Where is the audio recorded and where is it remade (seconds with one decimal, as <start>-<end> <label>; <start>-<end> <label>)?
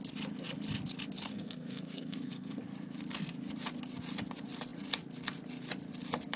0.0-1.3 recorded; 1.3-2.6 remade; 2.6-6.4 recorded